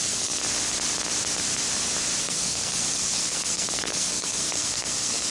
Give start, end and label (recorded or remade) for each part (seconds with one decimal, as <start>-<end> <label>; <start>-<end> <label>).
0.0-0.4 remade; 0.4-2.2 recorded; 2.2-5.3 remade